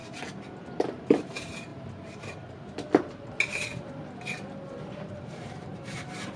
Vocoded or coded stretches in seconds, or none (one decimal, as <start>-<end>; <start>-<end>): 1.2-1.7; 5.2-6.4

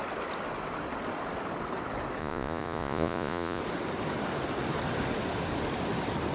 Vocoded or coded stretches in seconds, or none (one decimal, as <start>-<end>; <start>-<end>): 2.2-3.6

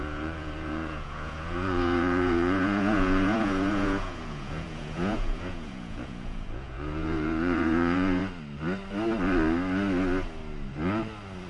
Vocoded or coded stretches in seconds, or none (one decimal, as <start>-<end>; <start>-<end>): 0.0-8.2

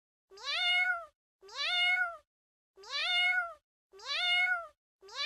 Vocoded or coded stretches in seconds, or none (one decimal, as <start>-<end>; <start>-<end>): 0.0-5.3